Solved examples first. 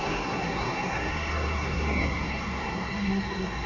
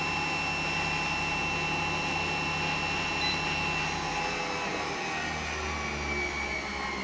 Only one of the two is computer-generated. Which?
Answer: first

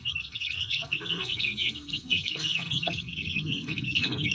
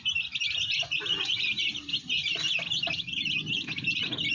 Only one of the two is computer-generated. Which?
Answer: first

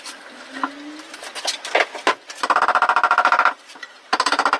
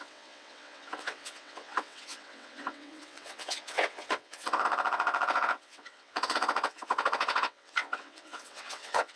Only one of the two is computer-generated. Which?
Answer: second